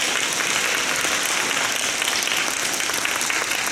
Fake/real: real